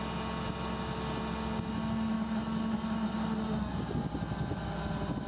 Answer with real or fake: real